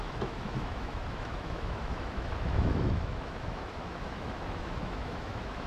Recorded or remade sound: remade